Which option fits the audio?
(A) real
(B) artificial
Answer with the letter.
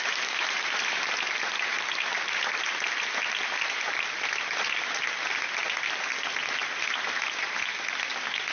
A